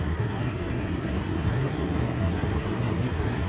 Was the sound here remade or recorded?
remade